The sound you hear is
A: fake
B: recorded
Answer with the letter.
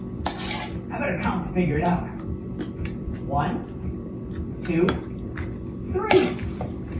A